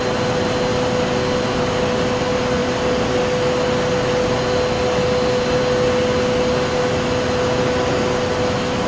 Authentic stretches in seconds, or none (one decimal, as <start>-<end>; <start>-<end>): 0.0-8.9